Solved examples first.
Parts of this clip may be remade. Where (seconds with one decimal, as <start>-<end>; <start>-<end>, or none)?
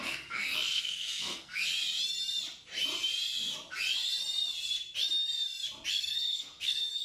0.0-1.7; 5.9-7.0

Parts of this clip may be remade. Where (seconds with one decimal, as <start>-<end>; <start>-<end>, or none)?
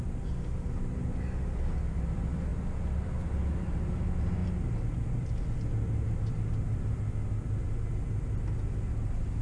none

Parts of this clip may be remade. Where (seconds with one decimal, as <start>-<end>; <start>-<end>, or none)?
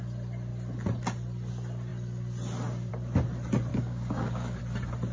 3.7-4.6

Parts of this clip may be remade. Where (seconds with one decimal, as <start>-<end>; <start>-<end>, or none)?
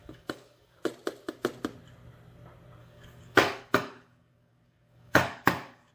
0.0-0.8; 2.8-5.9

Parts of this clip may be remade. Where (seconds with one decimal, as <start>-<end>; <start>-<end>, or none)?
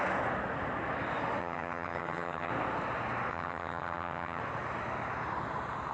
1.4-2.5; 3.3-4.4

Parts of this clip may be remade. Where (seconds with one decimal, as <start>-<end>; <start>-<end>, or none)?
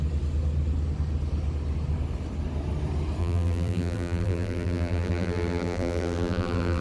3.2-6.8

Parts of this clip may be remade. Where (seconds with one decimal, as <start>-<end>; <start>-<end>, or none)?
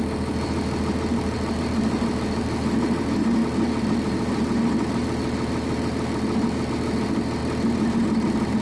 7.4-8.6